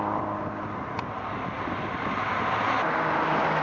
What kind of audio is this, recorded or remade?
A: remade